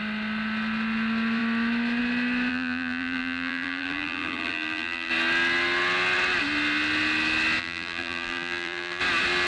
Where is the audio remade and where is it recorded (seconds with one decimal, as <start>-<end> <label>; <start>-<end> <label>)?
0.0-2.5 recorded; 2.5-5.1 remade; 5.1-7.6 recorded; 7.6-9.0 remade; 9.0-9.5 recorded